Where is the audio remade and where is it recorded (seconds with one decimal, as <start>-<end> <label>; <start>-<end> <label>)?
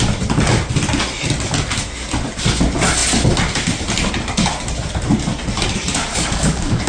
0.0-6.1 recorded; 6.1-6.9 remade